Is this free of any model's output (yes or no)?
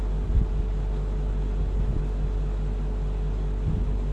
yes